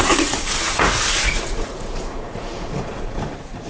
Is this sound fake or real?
fake